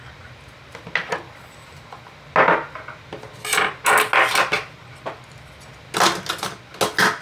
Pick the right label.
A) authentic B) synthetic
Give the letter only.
A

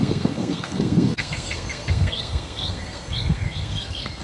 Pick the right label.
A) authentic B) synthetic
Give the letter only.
B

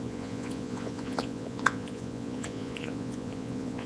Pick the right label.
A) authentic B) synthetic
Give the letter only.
B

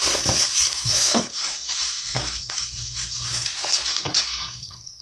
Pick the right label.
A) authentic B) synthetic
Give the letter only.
B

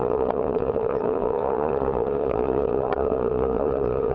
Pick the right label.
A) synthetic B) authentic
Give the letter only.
A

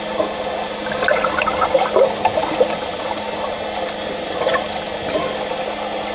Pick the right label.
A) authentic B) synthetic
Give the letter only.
A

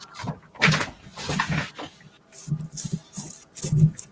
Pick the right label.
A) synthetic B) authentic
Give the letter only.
B